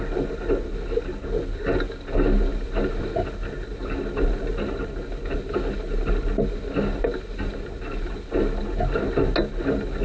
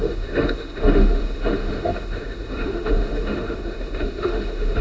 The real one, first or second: first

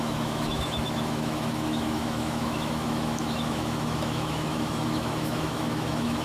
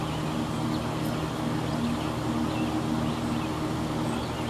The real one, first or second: second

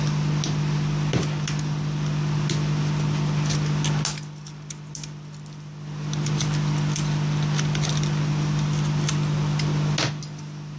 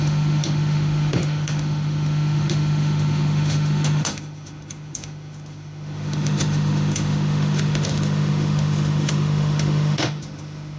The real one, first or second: first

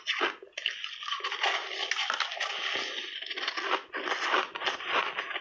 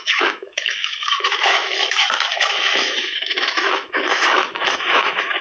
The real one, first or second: first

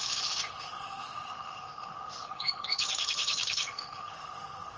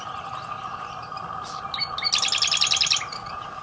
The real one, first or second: second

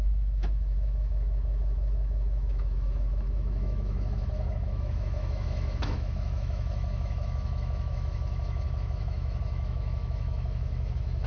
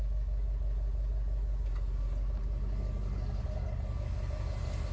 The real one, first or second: second